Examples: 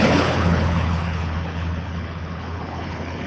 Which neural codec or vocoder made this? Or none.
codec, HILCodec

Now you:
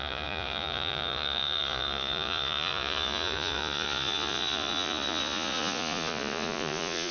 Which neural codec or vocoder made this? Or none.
vocoder, Vocos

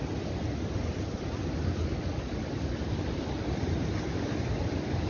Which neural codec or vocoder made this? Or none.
none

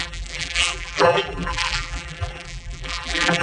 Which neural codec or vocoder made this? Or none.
vocoder, BigVGAN v2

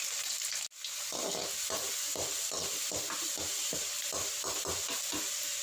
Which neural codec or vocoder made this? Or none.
none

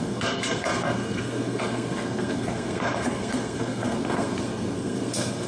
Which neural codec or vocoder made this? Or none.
codec, SNAC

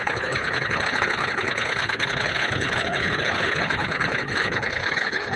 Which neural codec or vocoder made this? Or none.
codec, HILCodec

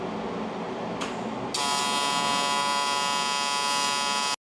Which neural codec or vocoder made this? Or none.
none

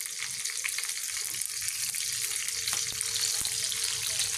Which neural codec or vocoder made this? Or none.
none